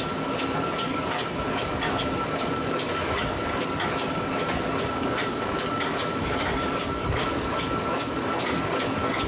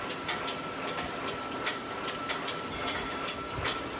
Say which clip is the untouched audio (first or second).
second